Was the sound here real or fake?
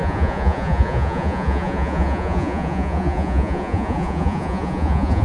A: fake